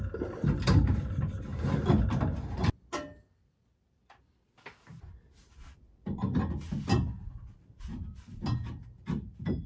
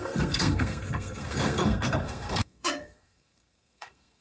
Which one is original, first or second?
first